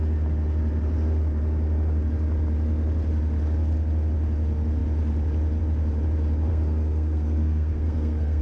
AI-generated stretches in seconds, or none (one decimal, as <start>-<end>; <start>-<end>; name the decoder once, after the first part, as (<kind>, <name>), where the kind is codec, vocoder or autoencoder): 6.5-8.4 (codec, SNAC)